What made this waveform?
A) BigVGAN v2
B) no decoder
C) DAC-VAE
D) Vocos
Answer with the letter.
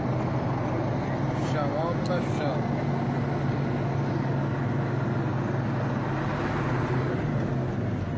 B